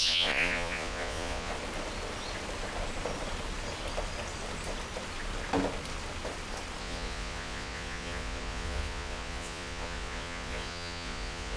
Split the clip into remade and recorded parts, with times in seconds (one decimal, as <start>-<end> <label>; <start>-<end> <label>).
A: 0.0-1.5 remade; 1.5-6.8 recorded; 6.8-11.6 remade